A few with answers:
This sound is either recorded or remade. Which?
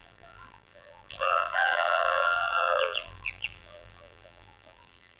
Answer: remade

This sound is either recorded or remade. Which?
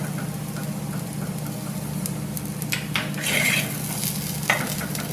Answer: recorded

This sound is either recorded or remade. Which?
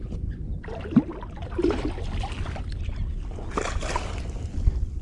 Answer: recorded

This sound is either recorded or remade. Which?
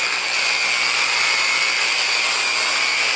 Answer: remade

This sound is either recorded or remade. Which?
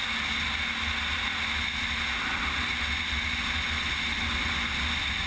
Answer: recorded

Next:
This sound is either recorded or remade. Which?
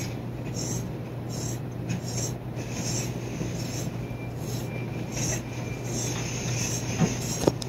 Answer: recorded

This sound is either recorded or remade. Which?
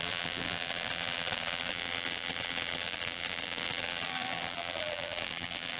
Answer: remade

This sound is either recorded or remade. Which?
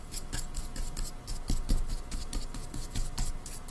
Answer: recorded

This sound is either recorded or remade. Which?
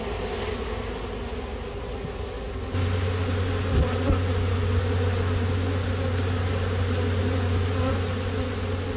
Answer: recorded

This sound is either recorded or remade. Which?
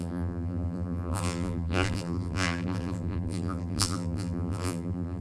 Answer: remade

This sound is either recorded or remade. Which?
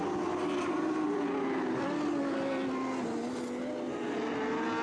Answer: recorded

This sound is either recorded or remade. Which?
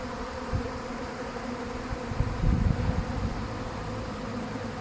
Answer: remade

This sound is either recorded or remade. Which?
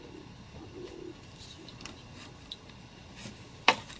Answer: remade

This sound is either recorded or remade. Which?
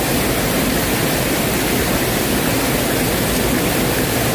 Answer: recorded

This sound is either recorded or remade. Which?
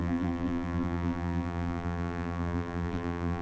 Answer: remade